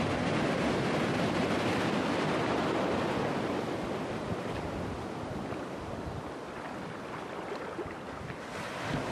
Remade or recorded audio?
recorded